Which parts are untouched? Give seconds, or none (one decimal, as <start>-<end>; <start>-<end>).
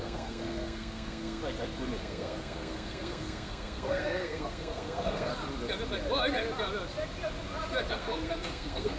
1.4-2.0; 5.3-7.9